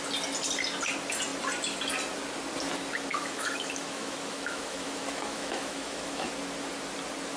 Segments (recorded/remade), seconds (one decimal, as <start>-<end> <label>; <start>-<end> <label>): 0.0-3.1 recorded; 3.1-6.3 remade; 6.3-7.4 recorded